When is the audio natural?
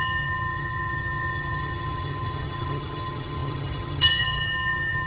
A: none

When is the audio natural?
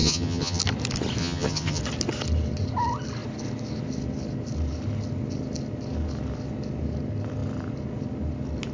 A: 0.6-1.2; 1.8-8.7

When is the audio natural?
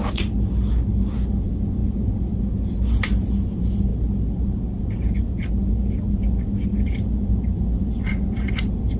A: 0.0-9.0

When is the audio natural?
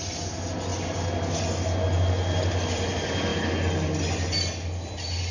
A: 0.0-5.3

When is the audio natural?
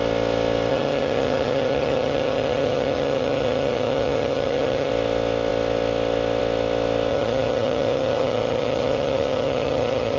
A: 0.0-0.7; 4.9-7.1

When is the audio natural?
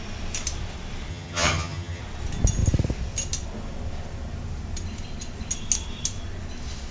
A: 0.0-1.1; 2.0-6.9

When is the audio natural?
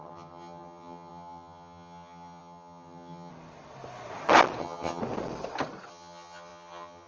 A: 3.3-4.6; 5.0-5.9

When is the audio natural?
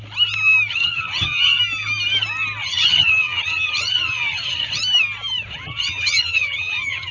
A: 0.0-0.7; 1.6-2.6; 4.8-5.5